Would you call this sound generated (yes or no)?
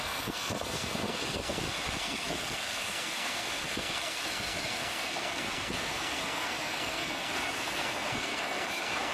yes